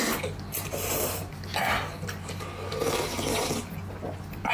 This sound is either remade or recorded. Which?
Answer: recorded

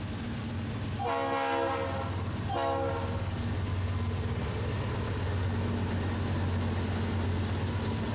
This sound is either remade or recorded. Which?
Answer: recorded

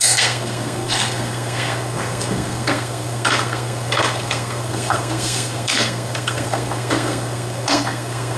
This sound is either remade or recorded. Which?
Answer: remade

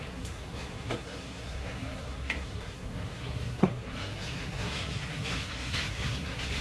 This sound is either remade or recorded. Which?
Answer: remade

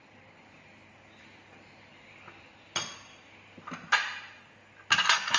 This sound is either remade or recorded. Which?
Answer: recorded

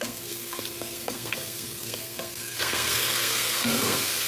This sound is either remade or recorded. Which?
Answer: remade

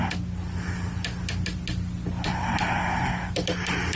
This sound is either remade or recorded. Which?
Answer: recorded